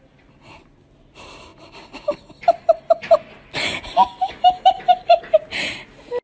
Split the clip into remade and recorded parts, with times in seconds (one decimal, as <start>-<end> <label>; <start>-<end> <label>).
0.0-6.2 recorded

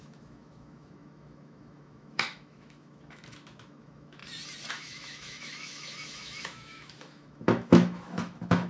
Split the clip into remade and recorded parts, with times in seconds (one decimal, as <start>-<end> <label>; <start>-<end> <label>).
0.0-4.2 remade; 4.2-4.7 recorded; 4.7-8.7 remade

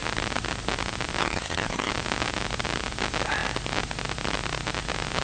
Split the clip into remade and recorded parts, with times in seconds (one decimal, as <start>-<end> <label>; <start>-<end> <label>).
0.0-1.2 recorded; 1.2-1.9 remade; 1.9-5.2 recorded

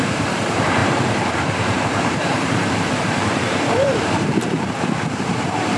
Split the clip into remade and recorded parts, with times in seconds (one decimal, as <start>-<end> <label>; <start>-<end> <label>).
0.0-5.8 remade